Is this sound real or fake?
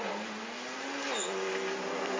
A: real